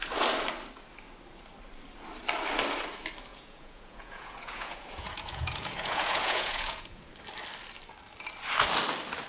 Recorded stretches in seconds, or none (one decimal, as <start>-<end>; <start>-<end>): 0.0-3.3; 7.1-9.3